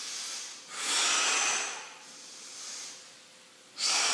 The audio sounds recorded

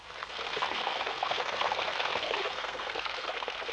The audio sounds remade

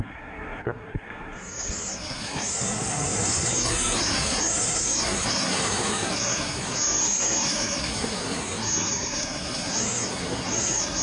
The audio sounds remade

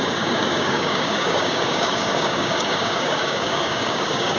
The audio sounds remade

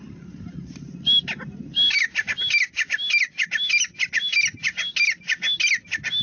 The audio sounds recorded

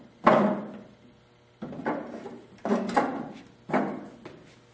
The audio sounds recorded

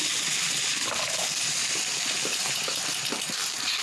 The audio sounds recorded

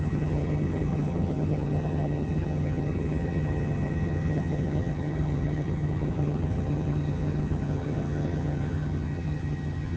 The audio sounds remade